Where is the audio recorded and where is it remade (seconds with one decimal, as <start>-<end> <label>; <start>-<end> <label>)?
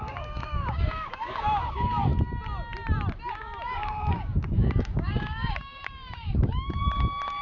0.0-2.1 remade; 2.1-3.3 recorded; 3.3-7.4 remade